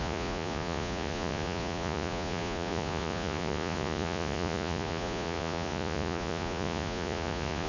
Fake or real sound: fake